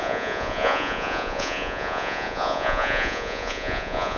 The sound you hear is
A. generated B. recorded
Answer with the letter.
A